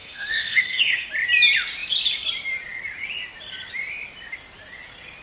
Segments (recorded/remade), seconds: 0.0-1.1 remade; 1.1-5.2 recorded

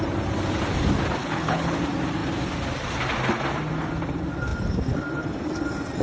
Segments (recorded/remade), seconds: 0.0-1.2 recorded; 1.2-1.8 remade; 1.8-6.0 recorded

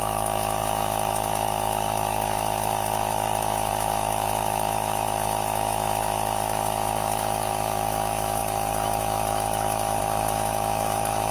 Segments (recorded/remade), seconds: 0.0-11.3 remade